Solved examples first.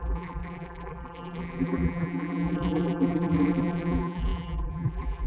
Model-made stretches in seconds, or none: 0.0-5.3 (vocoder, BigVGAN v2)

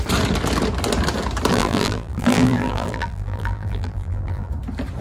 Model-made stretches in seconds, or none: 1.5-4.5 (vocoder, BigVGAN v2)

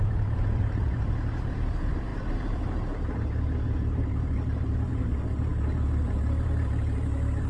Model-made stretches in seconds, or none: 0.0-7.5 (vocoder, BigVGAN v2)